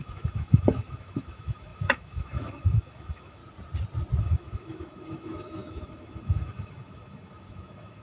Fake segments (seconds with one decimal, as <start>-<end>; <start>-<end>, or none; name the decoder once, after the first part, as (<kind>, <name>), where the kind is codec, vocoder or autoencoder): 0.0-3.4 (autoencoder, DAC-VAE); 4.2-8.0